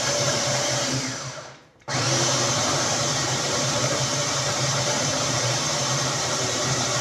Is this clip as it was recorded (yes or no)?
no